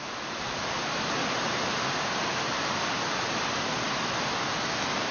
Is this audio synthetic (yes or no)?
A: no